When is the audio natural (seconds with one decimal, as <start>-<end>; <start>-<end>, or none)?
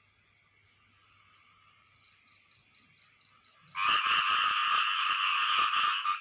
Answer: 0.0-6.2